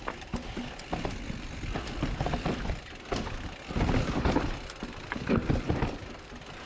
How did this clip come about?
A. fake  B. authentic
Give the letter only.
B